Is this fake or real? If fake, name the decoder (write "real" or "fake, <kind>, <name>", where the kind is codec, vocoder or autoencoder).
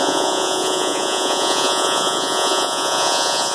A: fake, vocoder, Vocos